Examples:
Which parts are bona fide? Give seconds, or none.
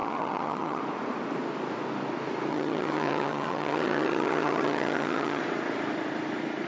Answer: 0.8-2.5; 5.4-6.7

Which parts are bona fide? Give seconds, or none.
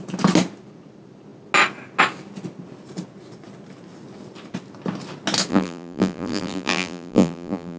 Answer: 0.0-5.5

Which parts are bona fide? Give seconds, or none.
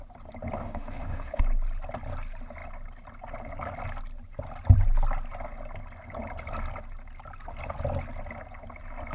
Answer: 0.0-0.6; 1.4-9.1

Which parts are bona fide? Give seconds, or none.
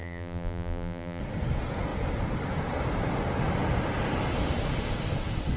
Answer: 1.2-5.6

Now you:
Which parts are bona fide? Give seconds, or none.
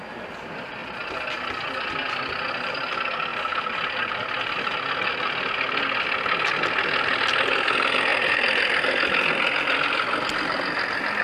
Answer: 0.0-8.1; 8.8-11.2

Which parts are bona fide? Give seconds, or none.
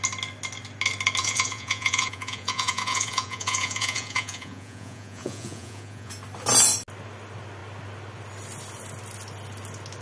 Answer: 0.0-1.2; 6.1-10.0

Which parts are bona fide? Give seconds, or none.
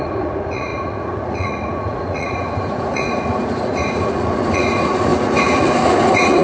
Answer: none